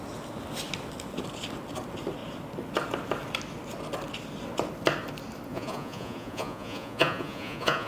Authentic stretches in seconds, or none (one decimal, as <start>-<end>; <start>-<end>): 0.0-5.5